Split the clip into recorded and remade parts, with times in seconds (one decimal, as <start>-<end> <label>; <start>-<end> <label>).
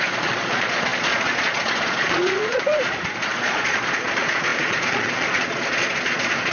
0.0-6.5 remade